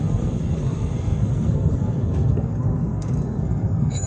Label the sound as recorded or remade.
remade